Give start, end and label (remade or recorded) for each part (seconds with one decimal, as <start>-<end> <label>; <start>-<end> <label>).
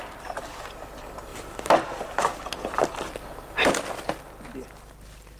0.0-1.3 recorded; 1.3-3.7 remade; 3.7-5.4 recorded